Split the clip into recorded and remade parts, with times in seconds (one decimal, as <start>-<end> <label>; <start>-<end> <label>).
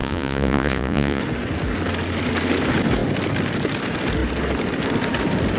0.0-1.2 remade; 1.2-5.6 recorded